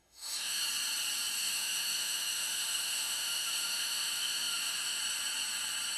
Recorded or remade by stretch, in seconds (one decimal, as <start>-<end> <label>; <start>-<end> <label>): 0.0-0.6 remade; 0.6-1.4 recorded; 1.4-5.0 remade; 5.0-6.0 recorded